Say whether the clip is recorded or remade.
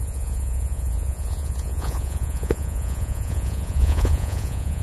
remade